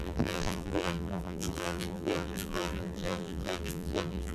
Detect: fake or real fake